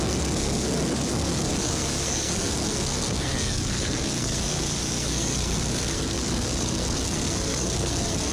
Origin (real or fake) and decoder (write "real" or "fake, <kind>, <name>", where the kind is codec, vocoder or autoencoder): fake, codec, SNAC